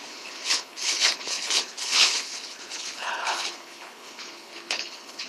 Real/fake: fake